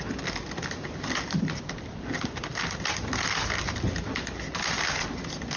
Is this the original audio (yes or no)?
yes